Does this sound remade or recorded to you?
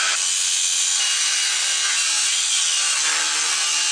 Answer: recorded